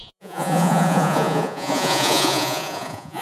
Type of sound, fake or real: fake